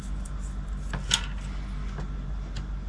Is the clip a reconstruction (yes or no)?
no